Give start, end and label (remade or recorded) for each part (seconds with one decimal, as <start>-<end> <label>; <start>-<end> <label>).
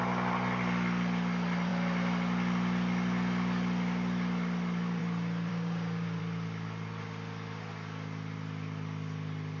0.0-5.5 recorded; 5.5-6.2 remade; 6.2-9.6 recorded